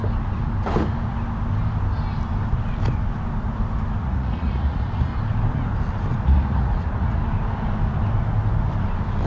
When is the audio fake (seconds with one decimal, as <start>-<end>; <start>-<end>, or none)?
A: 4.0-5.1; 6.2-7.2